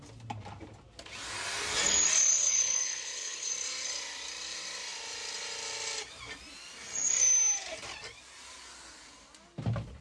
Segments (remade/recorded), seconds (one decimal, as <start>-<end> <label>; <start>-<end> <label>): 0.0-2.3 recorded; 2.3-3.5 remade; 3.5-10.0 recorded